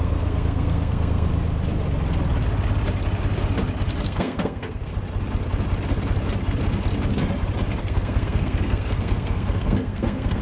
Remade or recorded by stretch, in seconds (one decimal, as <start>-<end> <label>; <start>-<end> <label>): 0.0-1.3 remade; 1.3-4.0 recorded; 4.0-4.9 remade; 4.9-7.8 recorded; 7.8-10.4 remade